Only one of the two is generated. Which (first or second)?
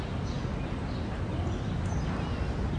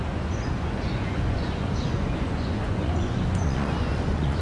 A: second